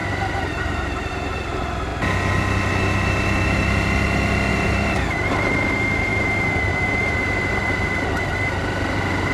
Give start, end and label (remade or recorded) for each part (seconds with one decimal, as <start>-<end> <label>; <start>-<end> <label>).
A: 0.0-1.9 remade; 1.9-4.5 recorded; 4.5-6.1 remade; 6.1-6.7 recorded; 6.7-7.6 remade; 7.6-8.6 recorded; 8.6-9.3 remade